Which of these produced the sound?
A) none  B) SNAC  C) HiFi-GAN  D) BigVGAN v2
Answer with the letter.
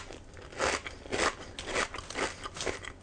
A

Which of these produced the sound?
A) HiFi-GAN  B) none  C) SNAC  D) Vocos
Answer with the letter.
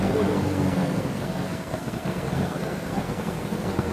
C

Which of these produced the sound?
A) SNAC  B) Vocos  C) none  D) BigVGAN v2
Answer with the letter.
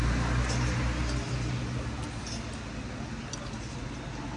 C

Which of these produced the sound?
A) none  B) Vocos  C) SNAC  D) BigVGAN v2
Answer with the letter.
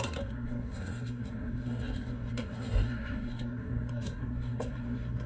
C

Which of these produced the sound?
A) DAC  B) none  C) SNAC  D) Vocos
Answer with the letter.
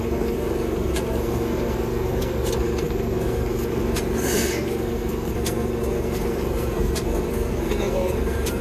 C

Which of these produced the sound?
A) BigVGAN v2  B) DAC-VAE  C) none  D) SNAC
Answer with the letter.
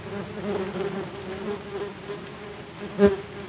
C